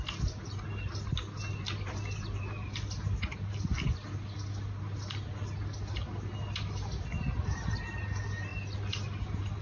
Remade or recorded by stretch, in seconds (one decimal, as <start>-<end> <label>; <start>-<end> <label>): 0.0-9.6 recorded